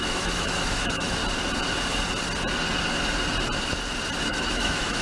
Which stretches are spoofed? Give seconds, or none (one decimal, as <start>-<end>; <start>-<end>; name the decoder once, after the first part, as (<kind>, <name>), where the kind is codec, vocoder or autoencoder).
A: 0.0-1.2 (autoencoder, DAC-VAE); 4.2-5.0